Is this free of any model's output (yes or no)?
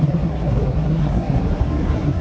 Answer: no